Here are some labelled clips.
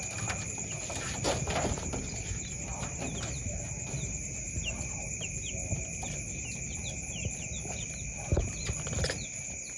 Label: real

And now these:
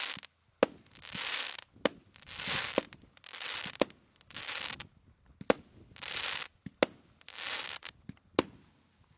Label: real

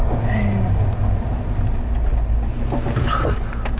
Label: real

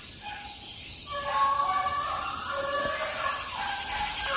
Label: real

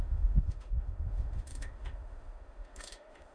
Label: fake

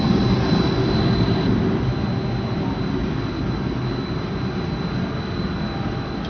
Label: real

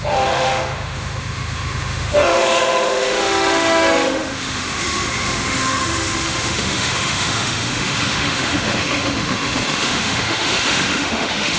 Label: fake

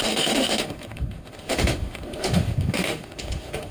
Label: fake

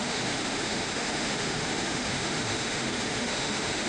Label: fake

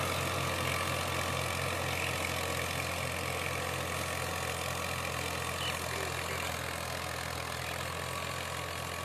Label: real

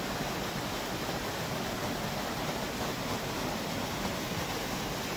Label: real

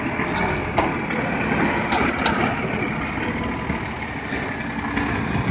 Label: real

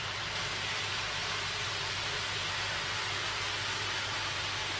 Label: real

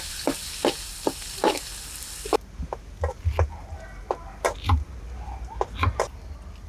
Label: real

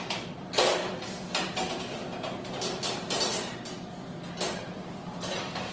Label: real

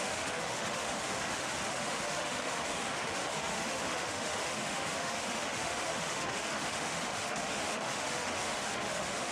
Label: fake